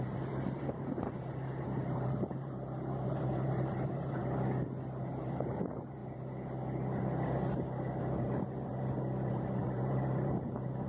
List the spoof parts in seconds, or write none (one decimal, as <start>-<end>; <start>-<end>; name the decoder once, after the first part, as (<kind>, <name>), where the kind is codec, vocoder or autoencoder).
0.0-4.2 (vocoder, BigVGAN v2); 5.1-6.0; 8.0-8.7; 9.3-10.9